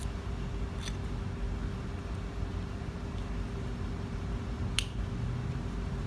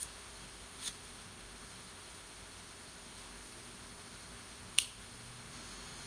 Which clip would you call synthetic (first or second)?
second